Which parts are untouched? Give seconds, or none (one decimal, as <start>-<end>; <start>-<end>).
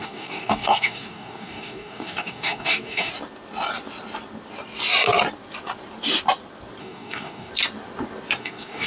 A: 3.1-6.8; 7.5-8.4